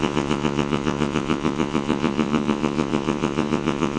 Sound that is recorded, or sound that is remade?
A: remade